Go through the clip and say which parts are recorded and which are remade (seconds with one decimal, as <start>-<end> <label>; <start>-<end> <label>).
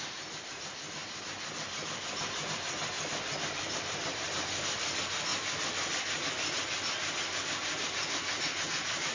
0.0-9.1 recorded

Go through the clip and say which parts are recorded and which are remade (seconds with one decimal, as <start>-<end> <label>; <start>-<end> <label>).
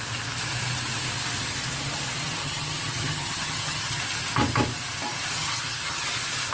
0.0-2.4 recorded; 2.4-4.0 remade; 4.0-5.4 recorded; 5.4-6.1 remade; 6.1-6.5 recorded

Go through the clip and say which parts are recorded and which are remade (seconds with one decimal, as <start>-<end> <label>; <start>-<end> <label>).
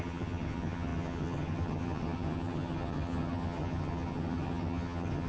0.0-5.3 remade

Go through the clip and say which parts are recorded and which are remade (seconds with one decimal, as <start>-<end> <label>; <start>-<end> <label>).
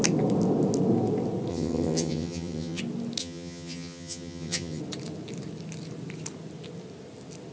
0.0-1.5 recorded; 1.5-2.8 remade; 2.8-3.2 recorded; 3.2-4.8 remade; 4.8-7.5 recorded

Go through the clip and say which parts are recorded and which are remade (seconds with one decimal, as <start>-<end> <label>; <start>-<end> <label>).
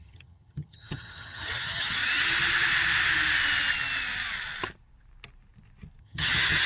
0.0-2.0 remade; 2.0-6.0 recorded; 6.0-6.7 remade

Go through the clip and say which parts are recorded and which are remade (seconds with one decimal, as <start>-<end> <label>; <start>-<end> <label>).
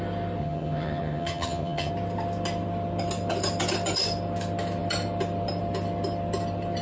0.0-0.4 recorded; 0.4-1.9 remade; 1.9-6.8 recorded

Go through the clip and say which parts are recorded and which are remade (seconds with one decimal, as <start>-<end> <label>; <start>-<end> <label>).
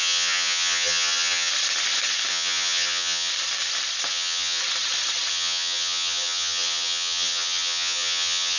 0.0-1.5 remade; 1.5-2.3 recorded; 2.3-3.3 remade; 3.3-4.1 recorded; 4.1-4.6 remade; 4.6-5.3 recorded; 5.3-8.6 remade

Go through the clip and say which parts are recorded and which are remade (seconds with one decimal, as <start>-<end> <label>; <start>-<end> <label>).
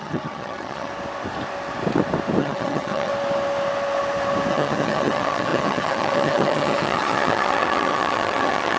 0.0-0.9 remade; 0.9-2.4 recorded; 2.4-3.1 remade; 3.1-4.5 recorded; 4.5-8.8 remade